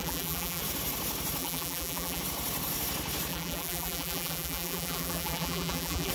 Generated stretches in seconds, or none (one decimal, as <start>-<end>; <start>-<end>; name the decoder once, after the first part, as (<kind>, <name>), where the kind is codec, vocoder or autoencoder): 0.0-0.6 (vocoder, BigVGAN v2); 1.4-2.2; 3.3-6.1